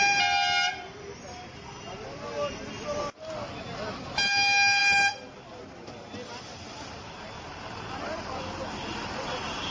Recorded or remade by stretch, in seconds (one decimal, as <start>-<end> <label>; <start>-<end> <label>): 0.0-9.7 recorded

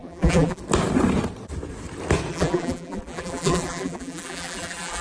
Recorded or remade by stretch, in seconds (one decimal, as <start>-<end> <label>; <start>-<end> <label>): 0.0-0.6 remade; 0.6-2.3 recorded; 2.3-5.0 remade

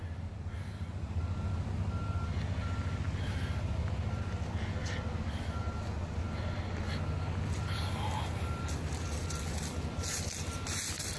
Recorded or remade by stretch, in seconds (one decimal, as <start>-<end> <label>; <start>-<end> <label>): 0.0-11.2 recorded

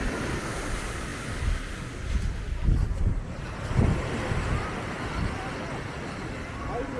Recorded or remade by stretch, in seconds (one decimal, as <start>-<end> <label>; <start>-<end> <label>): 0.0-2.8 recorded; 2.8-3.6 remade; 3.6-7.0 recorded